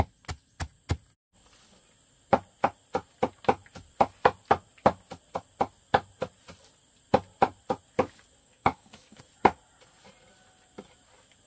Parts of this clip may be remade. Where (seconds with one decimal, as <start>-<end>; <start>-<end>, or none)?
8.4-9.2